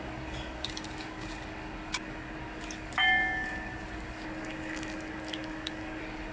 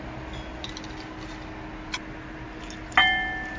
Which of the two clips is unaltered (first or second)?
second